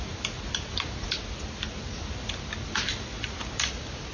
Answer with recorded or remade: recorded